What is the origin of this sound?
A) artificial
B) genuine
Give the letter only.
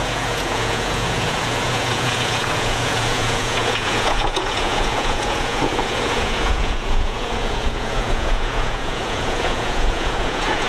A